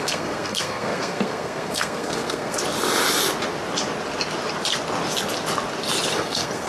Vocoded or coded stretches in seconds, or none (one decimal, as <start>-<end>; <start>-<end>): 0.0-2.6; 6.1-6.7